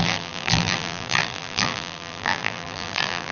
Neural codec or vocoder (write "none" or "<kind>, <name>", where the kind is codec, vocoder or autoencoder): vocoder, BigVGAN v2